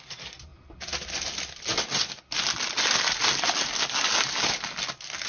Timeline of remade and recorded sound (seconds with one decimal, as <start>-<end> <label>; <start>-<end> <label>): 0.0-5.3 recorded

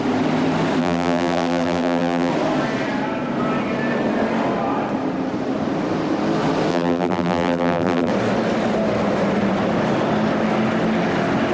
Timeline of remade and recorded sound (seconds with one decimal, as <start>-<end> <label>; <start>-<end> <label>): 0.0-0.8 recorded; 0.8-2.3 remade; 2.3-6.7 recorded; 6.7-8.1 remade; 8.1-11.5 recorded

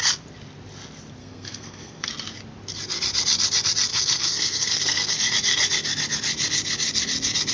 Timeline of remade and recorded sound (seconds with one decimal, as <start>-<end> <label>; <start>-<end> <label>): 0.0-1.2 recorded; 1.2-2.1 remade; 2.1-3.9 recorded; 3.9-5.1 remade; 5.1-7.5 recorded

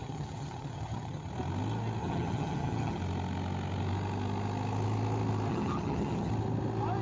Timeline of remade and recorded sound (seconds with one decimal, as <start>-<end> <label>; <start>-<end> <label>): 0.0-1.3 remade; 1.3-2.0 recorded; 2.0-3.0 remade; 3.0-5.5 recorded; 5.5-6.3 remade; 6.3-7.0 recorded

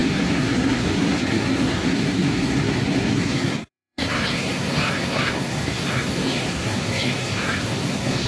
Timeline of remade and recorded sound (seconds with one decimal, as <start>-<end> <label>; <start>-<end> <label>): 0.0-8.3 remade